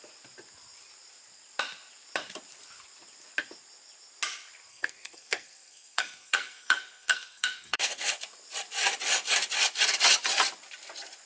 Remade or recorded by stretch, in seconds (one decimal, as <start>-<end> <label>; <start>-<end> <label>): 0.0-4.7 recorded; 4.7-8.1 remade; 8.1-11.3 recorded